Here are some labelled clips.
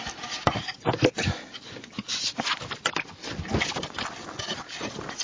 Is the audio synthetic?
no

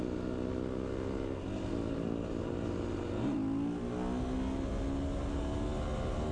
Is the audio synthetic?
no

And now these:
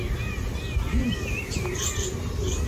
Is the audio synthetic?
no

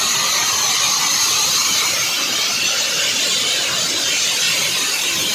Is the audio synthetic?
no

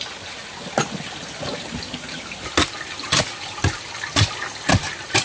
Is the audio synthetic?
no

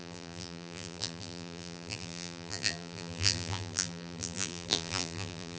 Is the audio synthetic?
yes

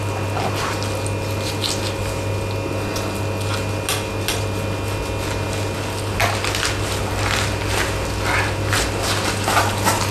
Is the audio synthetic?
no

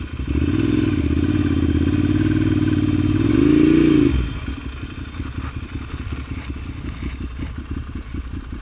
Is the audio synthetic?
no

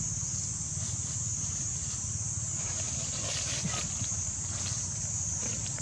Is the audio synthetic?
no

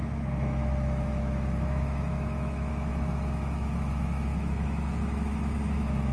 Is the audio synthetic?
yes